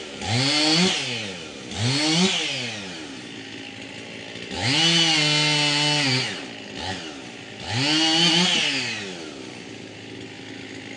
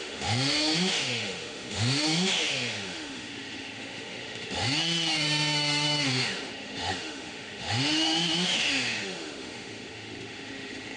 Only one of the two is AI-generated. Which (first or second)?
second